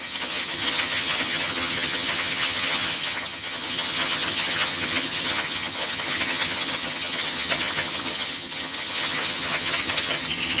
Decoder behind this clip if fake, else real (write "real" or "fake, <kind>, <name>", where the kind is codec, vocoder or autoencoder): fake, vocoder, HiFi-GAN